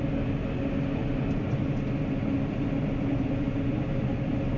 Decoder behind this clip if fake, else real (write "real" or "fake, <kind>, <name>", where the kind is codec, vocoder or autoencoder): real